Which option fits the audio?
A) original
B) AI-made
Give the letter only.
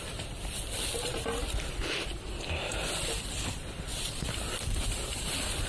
A